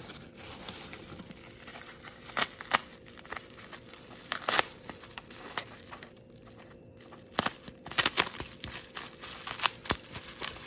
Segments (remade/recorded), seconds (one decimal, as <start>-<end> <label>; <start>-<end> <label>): 0.0-1.7 recorded; 1.7-2.3 remade; 2.3-10.7 recorded